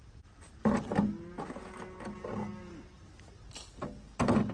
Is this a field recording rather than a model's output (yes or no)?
yes